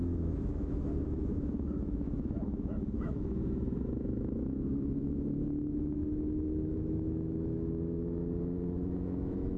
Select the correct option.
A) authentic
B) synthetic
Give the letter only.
B